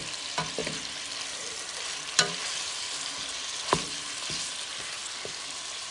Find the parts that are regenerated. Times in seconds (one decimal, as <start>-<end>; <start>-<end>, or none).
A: 0.6-3.6